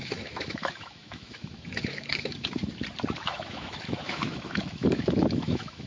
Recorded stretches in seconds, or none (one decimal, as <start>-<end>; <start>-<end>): 2.6-3.2